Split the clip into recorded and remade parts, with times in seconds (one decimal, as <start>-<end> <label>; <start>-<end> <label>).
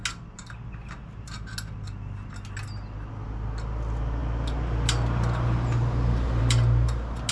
0.0-7.3 recorded